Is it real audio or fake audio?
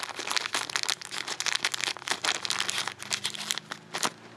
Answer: real